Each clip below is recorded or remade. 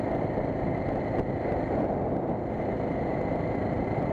recorded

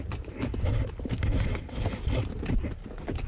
recorded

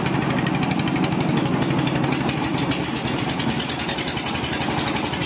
recorded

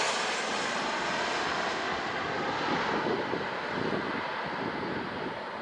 recorded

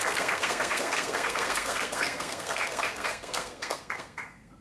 remade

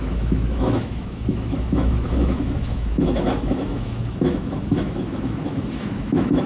remade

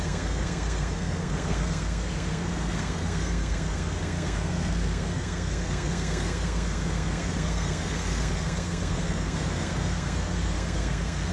remade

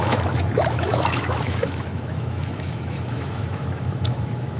remade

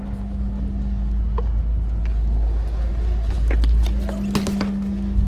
recorded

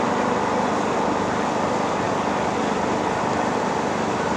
recorded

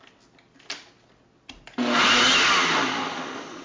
recorded